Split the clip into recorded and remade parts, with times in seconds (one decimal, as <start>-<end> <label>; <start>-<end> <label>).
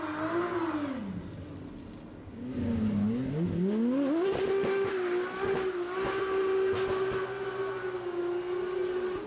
0.0-9.3 recorded